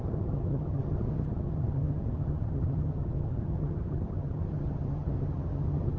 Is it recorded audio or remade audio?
remade